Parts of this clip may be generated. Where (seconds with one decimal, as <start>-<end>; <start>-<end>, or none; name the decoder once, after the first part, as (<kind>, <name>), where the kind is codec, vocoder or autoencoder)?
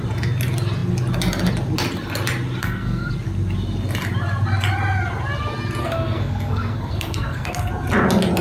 2.6-3.1 (codec, SNAC); 5.8-7.7